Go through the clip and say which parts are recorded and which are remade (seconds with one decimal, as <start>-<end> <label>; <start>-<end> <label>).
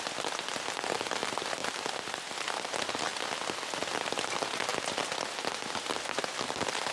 0.0-6.9 recorded